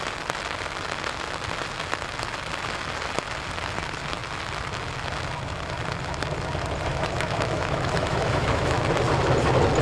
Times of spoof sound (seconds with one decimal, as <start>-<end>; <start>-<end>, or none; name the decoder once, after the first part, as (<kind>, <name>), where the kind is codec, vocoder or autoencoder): 6.9-8.8 (autoencoder, DAC-VAE)